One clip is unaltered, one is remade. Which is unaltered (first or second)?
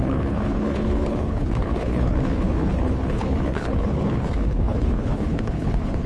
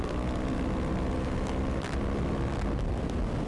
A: second